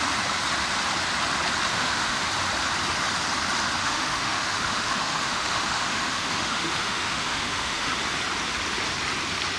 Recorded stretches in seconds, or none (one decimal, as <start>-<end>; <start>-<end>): 0.0-1.7; 2.3-3.8; 8.0-9.6